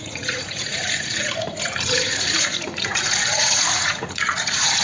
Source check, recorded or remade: remade